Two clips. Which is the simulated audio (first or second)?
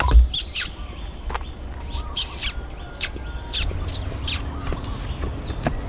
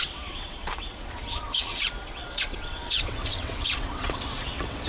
second